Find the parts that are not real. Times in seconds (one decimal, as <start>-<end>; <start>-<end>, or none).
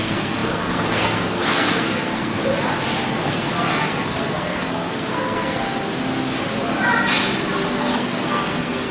0.0-2.4; 3.1-5.7; 7.8-8.9